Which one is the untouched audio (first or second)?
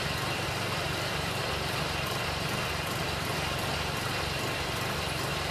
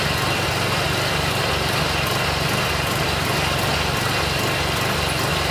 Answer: second